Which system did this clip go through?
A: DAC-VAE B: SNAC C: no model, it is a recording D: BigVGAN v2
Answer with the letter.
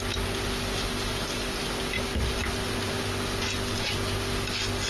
C